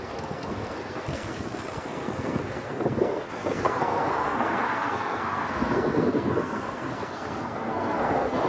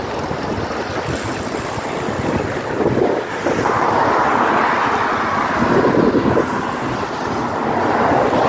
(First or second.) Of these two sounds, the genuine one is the second